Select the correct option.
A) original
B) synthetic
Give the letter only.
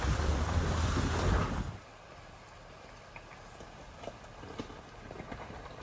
A